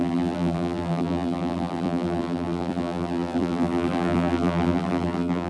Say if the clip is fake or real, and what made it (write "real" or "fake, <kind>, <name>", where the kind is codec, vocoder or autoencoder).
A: fake, vocoder, BigVGAN v2